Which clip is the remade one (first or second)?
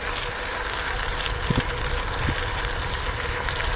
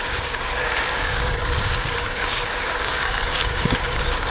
second